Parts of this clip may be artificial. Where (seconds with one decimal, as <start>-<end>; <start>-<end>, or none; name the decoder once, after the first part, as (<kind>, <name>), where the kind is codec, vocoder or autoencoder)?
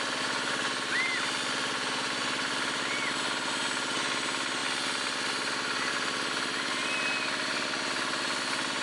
none